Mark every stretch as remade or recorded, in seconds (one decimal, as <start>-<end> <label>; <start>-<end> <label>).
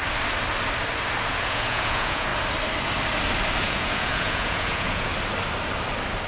0.0-1.3 recorded; 1.3-2.3 remade; 2.3-3.6 recorded; 3.6-5.1 remade; 5.1-6.3 recorded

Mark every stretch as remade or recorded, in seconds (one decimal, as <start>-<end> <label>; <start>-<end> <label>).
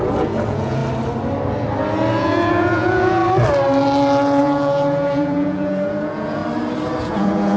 0.0-0.8 remade; 0.8-2.2 recorded; 2.2-3.2 remade; 3.2-4.4 recorded; 4.4-6.4 remade; 6.4-7.0 recorded; 7.0-7.6 remade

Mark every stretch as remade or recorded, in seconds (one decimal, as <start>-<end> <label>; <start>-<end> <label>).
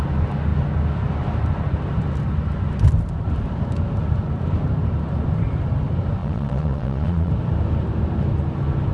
0.0-6.2 recorded; 6.2-7.3 remade; 7.3-8.9 recorded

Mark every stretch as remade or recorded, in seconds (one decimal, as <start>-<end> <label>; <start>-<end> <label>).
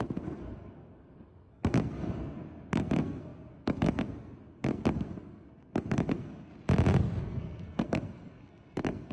0.0-6.5 remade; 6.5-7.2 recorded; 7.2-9.1 remade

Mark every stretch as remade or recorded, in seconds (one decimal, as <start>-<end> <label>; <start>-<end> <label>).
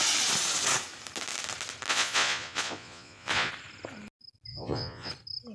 0.0-1.9 recorded; 1.9-3.5 remade; 3.5-4.5 recorded; 4.5-5.1 remade; 5.1-5.5 recorded